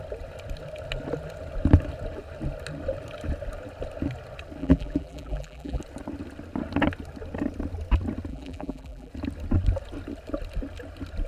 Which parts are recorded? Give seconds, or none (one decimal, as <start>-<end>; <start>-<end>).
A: 0.0-4.6; 5.8-8.3; 9.1-11.3